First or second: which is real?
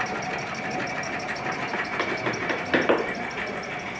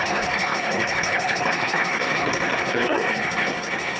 first